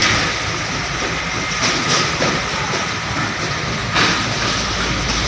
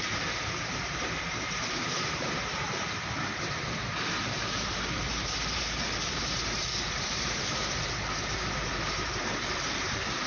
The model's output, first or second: second